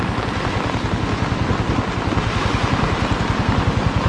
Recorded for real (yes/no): yes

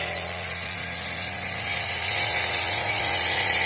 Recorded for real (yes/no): no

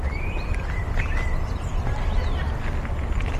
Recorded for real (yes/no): yes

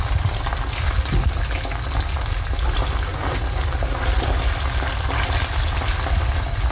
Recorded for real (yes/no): yes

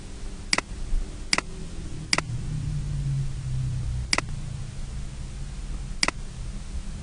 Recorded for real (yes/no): yes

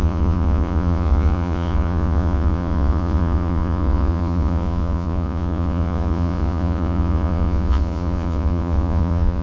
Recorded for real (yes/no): no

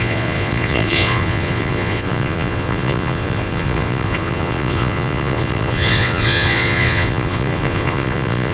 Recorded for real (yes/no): no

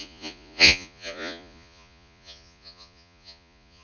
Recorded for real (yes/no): no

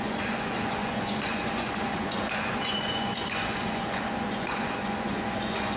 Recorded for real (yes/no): no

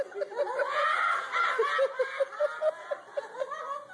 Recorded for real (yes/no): yes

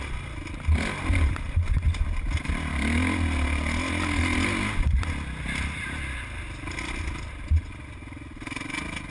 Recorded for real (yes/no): yes